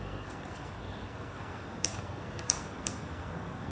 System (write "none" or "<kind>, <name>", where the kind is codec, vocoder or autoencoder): codec, SNAC